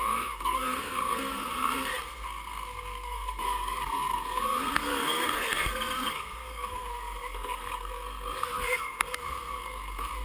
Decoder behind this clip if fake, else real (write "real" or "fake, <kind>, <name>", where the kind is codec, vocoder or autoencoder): fake, codec, SNAC